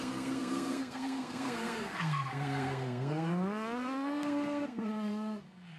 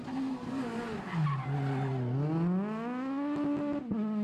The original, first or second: second